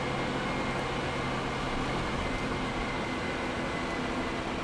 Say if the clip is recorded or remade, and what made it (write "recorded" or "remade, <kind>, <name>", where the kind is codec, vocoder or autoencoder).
recorded